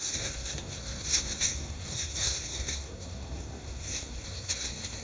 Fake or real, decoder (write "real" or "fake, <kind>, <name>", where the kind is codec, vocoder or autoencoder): fake, codec, SNAC